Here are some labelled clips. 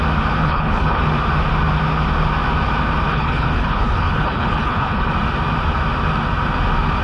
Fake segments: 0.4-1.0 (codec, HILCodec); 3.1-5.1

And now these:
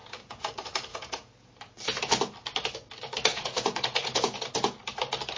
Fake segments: 0.0-0.5 (vocoder, Vocos); 0.9-1.5; 3.3-4.4

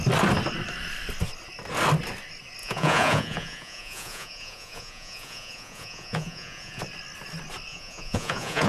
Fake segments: 2.6-6.8 (vocoder, Vocos); 7.7-8.7